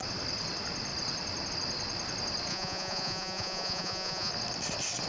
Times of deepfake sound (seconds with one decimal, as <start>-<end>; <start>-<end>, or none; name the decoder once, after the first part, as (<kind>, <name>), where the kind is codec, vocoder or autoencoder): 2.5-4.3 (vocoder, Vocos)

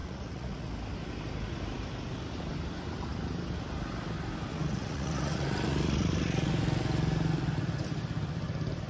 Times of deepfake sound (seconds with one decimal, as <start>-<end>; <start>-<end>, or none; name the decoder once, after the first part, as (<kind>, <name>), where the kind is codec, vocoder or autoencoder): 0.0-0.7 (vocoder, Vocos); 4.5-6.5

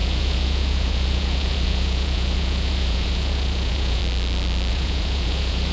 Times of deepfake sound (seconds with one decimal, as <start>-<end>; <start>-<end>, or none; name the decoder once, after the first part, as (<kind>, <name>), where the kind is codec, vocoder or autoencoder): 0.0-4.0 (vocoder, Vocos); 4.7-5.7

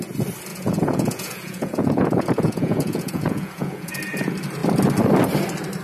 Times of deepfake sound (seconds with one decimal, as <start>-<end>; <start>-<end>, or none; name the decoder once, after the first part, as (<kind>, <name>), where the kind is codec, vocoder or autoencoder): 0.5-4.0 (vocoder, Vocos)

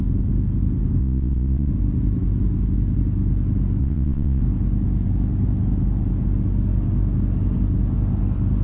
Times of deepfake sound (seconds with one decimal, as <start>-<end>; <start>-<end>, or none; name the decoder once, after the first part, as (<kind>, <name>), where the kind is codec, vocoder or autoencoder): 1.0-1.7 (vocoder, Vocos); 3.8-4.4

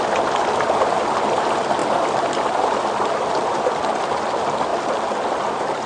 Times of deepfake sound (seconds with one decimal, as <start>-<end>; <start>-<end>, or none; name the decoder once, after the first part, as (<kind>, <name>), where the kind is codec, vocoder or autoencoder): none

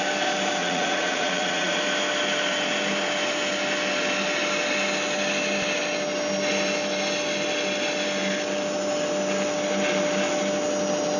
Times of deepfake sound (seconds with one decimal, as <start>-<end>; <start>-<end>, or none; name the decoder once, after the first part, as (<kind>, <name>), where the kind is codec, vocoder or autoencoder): 0.6-1.8 (vocoder, Vocos)